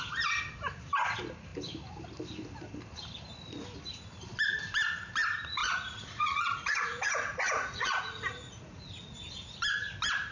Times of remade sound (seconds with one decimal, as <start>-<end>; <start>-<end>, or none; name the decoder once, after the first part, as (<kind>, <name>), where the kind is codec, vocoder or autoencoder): 5.6-8.9 (vocoder, Vocos)